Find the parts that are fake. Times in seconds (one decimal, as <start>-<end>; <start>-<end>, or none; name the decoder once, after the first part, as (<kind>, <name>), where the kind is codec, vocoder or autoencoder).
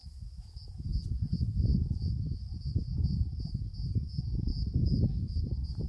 0.0-0.6 (autoencoder, DAC-VAE); 1.7-2.4; 4.5-5.4